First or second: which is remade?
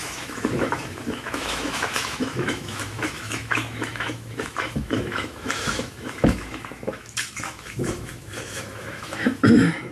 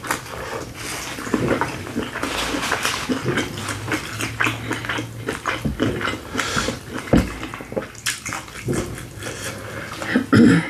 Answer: first